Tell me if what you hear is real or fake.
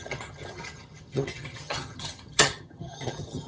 fake